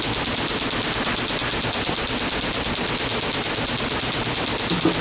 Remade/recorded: recorded